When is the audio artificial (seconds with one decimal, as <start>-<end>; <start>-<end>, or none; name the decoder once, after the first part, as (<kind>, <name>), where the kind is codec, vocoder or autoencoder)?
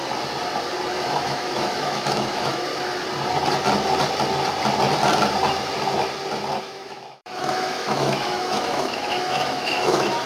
1.0-2.7 (autoencoder, DAC-VAE); 6.6-10.3